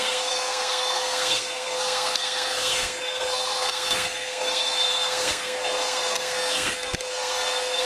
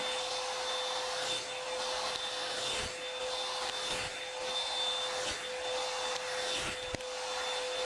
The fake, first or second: first